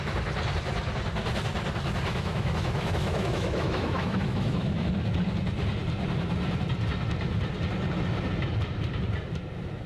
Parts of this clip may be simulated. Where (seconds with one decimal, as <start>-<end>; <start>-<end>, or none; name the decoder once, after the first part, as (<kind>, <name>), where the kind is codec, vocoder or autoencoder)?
2.1-4.9 (autoencoder, DAC-VAE)